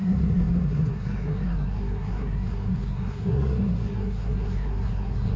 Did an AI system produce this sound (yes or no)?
yes